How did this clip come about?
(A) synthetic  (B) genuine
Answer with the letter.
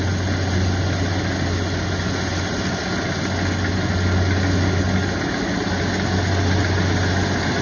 B